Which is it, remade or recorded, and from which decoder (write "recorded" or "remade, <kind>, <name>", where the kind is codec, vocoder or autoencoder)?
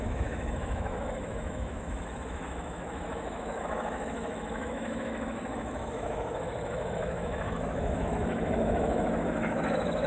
remade, autoencoder, DAC-VAE